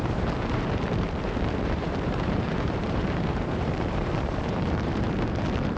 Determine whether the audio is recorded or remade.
remade